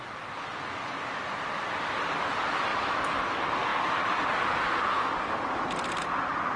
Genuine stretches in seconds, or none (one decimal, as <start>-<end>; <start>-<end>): 2.7-3.2; 3.7-6.0